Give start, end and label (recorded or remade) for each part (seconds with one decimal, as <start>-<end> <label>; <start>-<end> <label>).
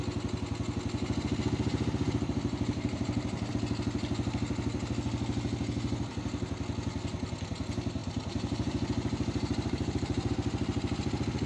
0.0-1.7 recorded; 1.7-3.5 remade; 3.5-8.0 recorded; 8.0-10.3 remade; 10.3-11.5 recorded